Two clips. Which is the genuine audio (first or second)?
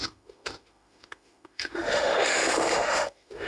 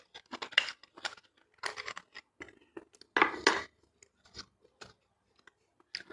second